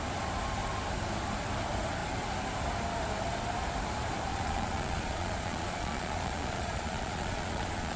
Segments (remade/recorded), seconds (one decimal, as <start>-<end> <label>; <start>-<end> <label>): 0.0-4.3 recorded; 4.3-8.0 remade